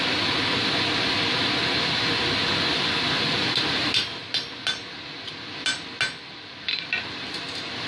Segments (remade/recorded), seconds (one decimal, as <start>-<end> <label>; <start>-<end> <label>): 0.0-7.9 recorded